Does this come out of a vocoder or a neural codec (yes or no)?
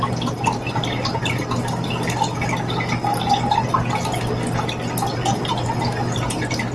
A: no